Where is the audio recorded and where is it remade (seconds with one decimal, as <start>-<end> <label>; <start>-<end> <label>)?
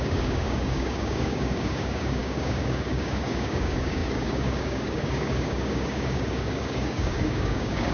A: 0.0-7.9 remade